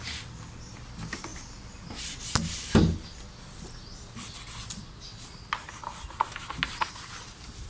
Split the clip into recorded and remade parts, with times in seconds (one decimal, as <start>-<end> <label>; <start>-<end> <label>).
0.0-1.3 recorded; 1.3-1.9 remade; 1.9-7.7 recorded